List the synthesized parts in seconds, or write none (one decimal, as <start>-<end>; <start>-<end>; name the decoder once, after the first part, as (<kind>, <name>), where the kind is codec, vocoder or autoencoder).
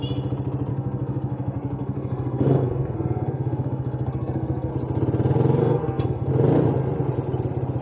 0.7-4.7 (codec, SNAC); 5.6-6.3